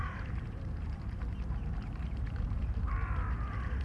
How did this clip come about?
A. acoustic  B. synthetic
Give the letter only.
B